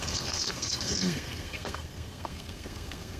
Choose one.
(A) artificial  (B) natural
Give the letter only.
A